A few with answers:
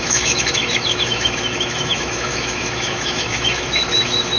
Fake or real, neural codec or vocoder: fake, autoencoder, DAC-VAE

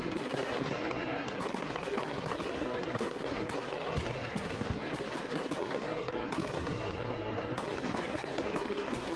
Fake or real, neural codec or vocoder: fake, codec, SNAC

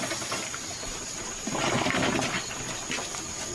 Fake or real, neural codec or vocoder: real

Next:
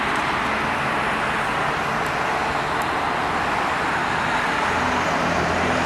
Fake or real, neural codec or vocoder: real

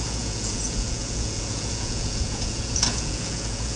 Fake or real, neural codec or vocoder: fake, vocoder, Vocos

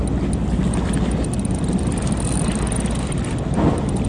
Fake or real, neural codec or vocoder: real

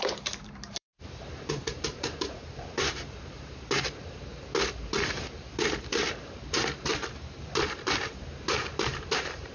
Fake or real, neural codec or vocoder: fake, vocoder, BigVGAN v2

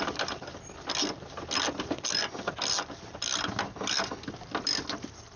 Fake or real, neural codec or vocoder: real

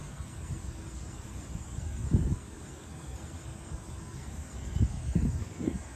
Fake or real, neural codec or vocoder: fake, codec, SNAC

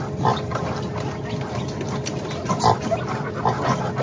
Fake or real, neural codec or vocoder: real